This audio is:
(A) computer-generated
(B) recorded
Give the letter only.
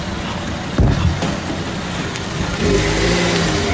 B